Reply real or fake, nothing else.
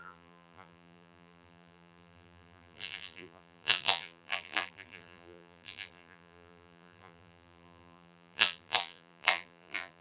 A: fake